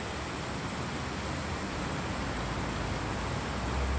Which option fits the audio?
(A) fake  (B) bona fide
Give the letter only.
B